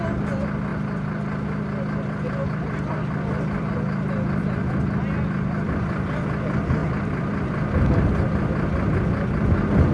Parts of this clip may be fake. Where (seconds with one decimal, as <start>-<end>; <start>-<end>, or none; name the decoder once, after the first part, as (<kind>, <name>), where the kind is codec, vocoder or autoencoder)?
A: none